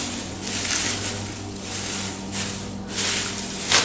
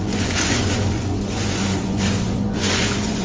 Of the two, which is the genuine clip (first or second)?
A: first